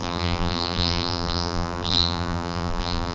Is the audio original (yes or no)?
no